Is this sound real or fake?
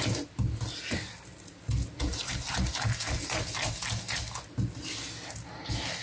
real